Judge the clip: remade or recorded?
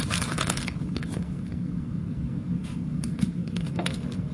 remade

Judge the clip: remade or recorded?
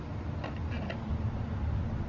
recorded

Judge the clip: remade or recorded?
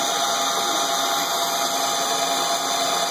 recorded